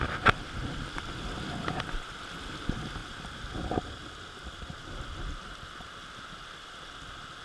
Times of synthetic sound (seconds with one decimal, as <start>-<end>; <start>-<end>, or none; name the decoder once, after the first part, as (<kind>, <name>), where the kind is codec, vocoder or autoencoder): none